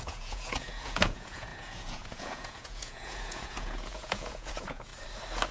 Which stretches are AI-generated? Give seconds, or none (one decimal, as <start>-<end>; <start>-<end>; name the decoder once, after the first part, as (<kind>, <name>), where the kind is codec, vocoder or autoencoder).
0.0-4.9 (vocoder, Vocos)